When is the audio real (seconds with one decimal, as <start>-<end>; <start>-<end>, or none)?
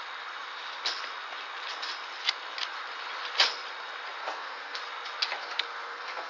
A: 0.0-4.2; 4.8-5.4